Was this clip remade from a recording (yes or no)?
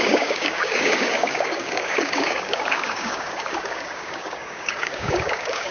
yes